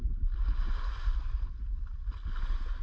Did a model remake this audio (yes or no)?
no